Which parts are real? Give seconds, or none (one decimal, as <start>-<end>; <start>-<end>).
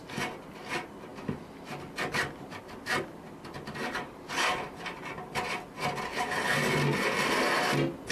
0.0-8.1